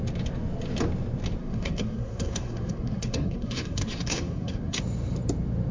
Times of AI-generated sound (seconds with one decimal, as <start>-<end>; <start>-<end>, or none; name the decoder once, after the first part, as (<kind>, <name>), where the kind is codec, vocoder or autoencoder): 1.4-4.8 (codec, SNAC)